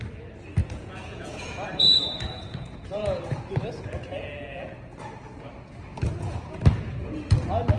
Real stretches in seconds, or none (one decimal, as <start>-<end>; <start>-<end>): 0.0-0.6; 3.2-7.8